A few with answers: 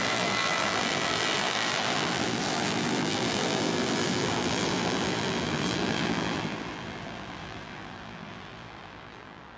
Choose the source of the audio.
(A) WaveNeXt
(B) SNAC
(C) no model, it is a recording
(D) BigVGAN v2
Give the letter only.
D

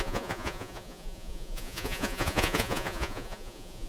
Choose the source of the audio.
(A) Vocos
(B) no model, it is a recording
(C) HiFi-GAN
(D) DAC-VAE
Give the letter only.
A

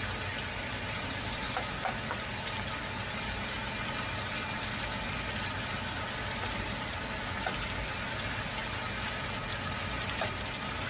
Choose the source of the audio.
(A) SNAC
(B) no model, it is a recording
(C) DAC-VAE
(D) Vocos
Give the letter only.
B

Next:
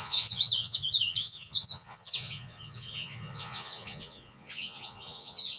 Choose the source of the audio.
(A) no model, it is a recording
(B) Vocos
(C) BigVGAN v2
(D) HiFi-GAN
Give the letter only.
B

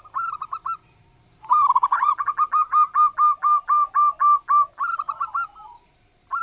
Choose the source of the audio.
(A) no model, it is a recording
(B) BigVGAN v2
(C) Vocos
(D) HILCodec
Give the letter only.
A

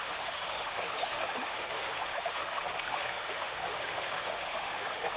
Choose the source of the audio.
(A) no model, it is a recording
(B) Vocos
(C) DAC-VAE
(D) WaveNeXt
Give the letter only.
C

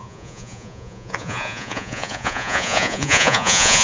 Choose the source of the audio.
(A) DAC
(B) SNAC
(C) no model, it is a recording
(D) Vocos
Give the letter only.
D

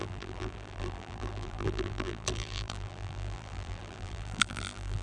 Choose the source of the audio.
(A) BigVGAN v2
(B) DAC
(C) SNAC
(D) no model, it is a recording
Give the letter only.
A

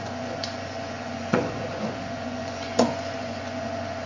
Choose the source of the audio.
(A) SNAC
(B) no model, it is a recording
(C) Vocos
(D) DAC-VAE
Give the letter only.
C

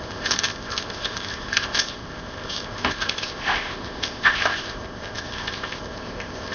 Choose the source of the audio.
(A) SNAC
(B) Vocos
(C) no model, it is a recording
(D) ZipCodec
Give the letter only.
D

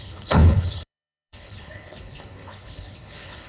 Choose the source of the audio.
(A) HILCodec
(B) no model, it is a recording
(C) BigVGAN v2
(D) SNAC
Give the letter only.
A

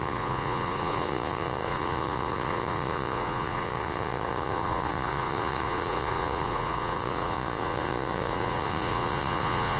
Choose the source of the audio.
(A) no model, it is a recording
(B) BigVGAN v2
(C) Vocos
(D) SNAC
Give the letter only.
C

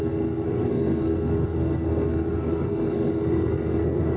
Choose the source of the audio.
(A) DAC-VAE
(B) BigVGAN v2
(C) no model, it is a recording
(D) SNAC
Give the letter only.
D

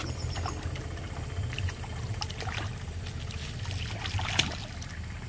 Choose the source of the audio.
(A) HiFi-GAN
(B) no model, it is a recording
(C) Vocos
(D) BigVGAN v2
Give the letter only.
B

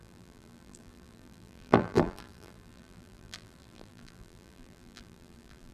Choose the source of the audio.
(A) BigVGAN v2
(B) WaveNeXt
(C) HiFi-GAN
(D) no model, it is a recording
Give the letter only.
A